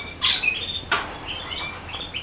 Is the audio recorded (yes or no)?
yes